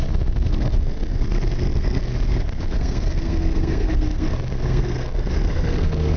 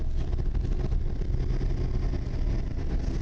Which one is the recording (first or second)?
second